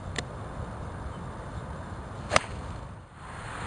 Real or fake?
fake